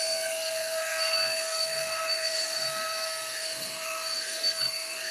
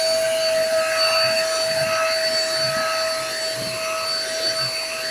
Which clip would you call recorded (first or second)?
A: second